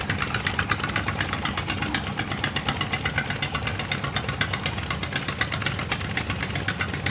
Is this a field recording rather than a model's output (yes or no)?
yes